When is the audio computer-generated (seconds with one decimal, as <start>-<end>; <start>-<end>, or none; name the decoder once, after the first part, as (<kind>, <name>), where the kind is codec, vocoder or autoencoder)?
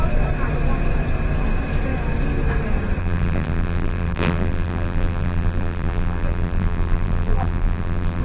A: 3.0-8.2 (vocoder, BigVGAN v2)